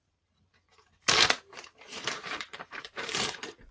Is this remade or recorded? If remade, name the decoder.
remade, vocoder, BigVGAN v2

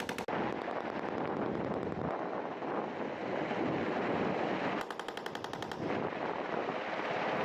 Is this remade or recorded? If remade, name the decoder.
recorded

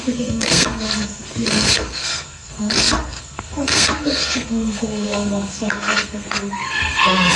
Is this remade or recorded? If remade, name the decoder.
remade, codec, SNAC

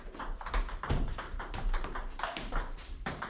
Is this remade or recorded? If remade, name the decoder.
remade, vocoder, BigVGAN v2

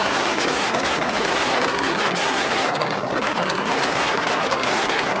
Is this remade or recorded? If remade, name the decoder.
remade, codec, SNAC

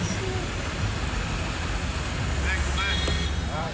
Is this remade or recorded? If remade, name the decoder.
recorded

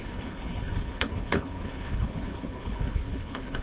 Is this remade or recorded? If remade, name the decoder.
remade, codec, HILCodec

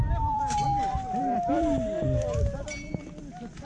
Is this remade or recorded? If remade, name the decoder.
remade, vocoder, BigVGAN v2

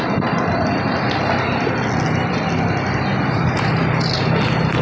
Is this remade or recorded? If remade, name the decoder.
recorded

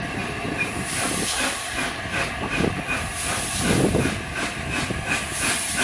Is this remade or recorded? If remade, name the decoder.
recorded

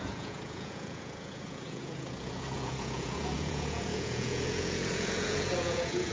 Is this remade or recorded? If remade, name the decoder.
remade, vocoder, Vocos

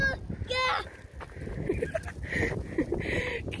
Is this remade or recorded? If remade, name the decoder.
recorded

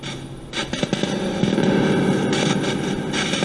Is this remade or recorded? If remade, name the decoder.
recorded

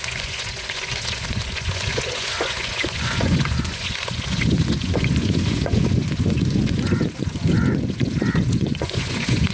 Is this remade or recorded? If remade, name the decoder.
remade, vocoder, Vocos